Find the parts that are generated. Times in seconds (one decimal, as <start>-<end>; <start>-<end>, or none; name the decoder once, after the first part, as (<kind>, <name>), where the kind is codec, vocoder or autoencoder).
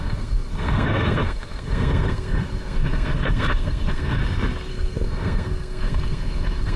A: 0.0-4.2 (codec, SNAC); 4.7-6.8